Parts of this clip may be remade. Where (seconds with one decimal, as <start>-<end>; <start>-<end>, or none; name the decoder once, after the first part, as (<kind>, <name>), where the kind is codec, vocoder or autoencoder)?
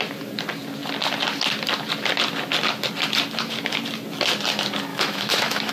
4.9-5.7 (autoencoder, DAC-VAE)